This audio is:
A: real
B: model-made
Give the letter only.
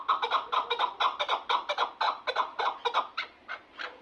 A